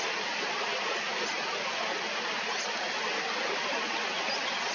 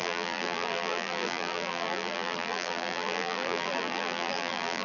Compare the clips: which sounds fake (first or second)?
second